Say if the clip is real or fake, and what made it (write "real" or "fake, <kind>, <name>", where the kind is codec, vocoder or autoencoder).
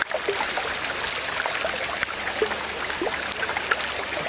real